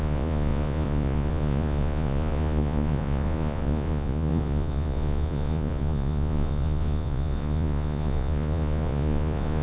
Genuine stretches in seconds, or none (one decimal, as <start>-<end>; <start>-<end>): none